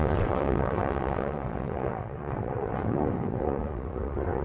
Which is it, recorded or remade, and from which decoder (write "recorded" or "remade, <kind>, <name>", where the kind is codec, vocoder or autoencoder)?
remade, vocoder, WaveNeXt